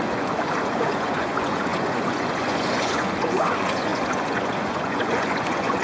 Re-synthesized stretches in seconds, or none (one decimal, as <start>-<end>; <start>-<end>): 0.0-5.8